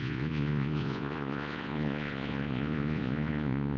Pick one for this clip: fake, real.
fake